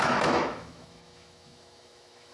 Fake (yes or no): yes